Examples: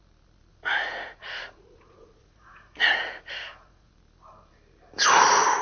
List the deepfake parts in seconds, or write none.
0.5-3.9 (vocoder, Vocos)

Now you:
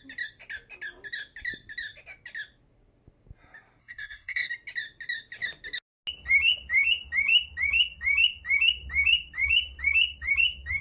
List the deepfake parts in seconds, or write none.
3.8-4.5 (codec, SNAC)

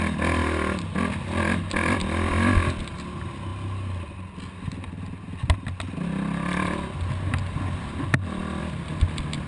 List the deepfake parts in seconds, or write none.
none